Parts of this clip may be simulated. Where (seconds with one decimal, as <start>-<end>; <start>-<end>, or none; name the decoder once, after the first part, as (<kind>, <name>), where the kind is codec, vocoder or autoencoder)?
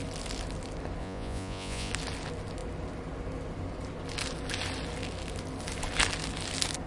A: 1.0-1.9 (vocoder, Vocos)